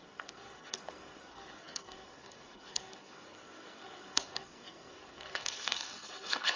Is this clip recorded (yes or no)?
no